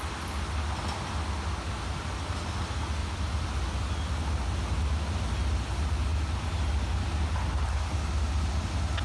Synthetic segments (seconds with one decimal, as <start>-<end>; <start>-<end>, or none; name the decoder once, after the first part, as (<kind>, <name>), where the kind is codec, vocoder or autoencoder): 3.0-3.8 (vocoder, BigVGAN v2)